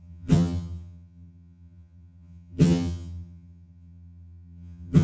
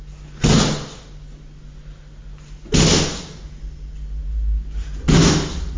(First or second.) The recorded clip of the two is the second